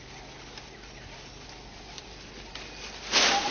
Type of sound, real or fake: real